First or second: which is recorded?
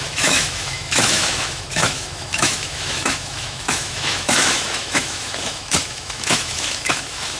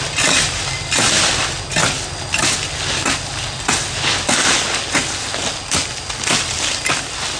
second